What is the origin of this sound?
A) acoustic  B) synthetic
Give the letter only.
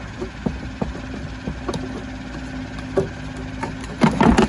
A